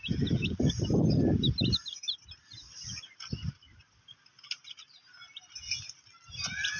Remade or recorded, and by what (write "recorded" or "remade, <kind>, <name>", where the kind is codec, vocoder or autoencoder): recorded